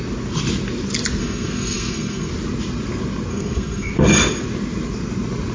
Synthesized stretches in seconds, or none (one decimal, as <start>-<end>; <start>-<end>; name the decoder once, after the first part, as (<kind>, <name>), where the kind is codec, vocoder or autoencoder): 1.2-2.3 (codec, SNAC); 3.3-3.9